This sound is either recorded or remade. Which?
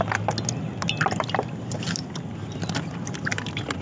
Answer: recorded